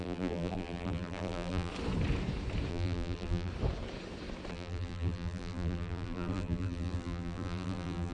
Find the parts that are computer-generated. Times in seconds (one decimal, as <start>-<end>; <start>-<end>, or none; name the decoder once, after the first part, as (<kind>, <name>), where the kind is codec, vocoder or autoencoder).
0.0-1.7 (vocoder, BigVGAN v2); 2.7-3.5; 4.5-8.1

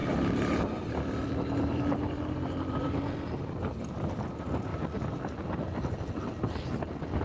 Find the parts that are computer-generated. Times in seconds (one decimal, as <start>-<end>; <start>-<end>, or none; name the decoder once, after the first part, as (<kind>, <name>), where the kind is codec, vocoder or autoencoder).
0.0-3.5 (vocoder, BigVGAN v2); 4.7-5.4

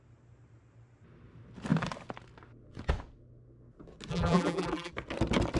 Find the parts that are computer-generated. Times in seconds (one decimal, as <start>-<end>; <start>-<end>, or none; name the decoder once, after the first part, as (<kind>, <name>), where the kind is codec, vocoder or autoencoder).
4.1-4.9 (vocoder, BigVGAN v2)

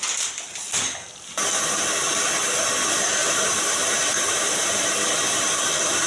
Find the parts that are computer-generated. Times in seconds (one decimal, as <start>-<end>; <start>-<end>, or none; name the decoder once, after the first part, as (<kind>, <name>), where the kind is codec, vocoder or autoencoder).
3.2-5.5 (vocoder, BigVGAN v2)

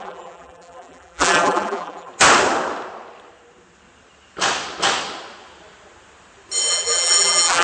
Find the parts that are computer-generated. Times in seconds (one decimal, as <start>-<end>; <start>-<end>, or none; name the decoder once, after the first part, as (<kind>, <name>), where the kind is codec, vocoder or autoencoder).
0.0-2.1 (vocoder, BigVGAN v2); 6.7-7.6